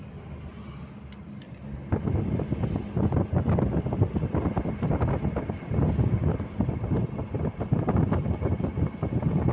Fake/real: real